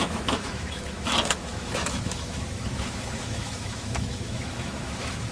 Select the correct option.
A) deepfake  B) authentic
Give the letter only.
A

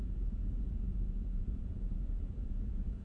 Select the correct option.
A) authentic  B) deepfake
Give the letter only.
B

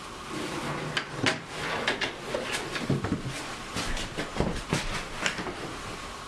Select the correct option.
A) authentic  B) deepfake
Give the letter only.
A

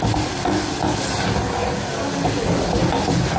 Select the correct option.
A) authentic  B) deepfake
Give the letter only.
A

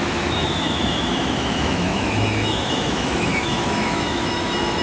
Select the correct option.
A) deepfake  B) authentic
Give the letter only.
A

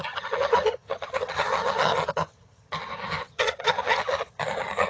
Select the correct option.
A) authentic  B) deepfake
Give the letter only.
B